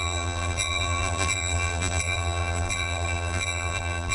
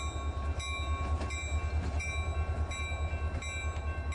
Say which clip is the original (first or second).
second